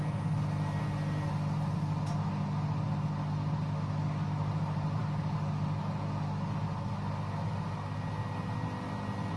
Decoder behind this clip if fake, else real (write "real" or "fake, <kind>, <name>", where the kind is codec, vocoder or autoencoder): real